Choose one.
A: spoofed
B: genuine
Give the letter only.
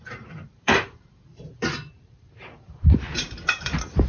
A